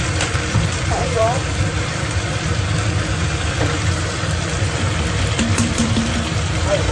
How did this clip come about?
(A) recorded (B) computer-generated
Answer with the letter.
B